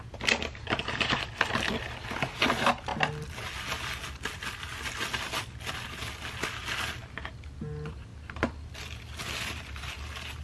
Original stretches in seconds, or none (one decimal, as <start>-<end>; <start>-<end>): 0.0-10.4